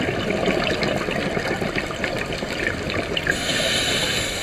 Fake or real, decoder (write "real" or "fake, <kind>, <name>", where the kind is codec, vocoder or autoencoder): real